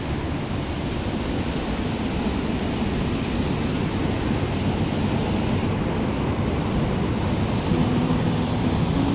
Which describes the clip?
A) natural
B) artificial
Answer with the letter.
A